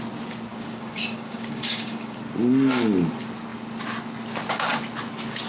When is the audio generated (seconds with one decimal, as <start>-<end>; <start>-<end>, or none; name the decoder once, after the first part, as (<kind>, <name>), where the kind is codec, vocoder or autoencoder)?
0.5-2.2 (codec, DAC)